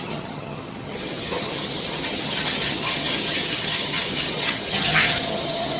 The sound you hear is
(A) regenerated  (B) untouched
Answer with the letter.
A